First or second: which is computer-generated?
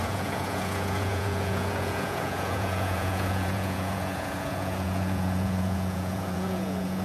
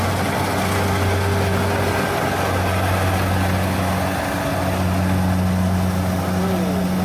first